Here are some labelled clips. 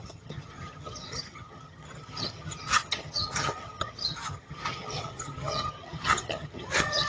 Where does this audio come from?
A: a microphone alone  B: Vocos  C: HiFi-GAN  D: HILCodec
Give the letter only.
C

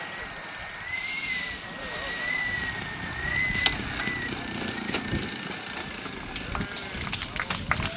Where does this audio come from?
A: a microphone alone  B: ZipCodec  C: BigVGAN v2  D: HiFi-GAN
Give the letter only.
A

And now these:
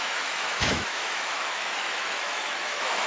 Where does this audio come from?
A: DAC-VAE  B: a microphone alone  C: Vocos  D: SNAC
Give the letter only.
A